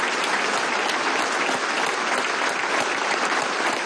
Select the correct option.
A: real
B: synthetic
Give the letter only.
A